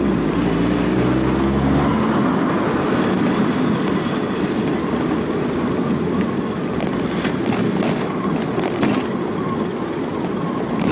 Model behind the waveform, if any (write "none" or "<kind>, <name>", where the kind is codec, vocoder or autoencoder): none